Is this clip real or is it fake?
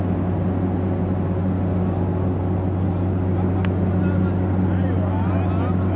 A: real